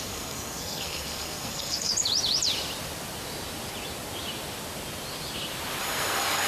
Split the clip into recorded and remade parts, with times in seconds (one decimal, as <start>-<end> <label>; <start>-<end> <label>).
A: 0.0-1.9 remade; 1.9-5.8 recorded; 5.8-6.5 remade